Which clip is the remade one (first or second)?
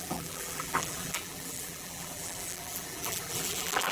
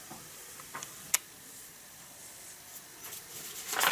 first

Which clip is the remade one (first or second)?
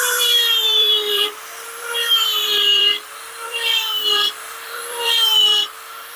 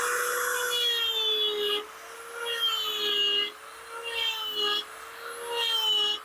first